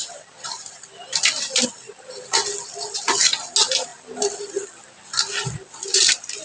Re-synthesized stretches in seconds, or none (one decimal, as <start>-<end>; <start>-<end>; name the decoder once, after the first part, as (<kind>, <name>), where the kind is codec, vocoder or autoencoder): none